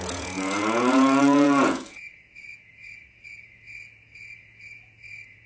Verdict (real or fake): fake